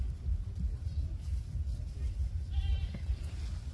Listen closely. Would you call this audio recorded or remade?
recorded